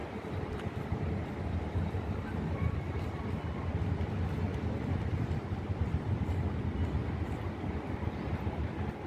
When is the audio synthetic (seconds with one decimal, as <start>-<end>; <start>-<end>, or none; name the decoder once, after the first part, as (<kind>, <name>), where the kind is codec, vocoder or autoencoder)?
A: none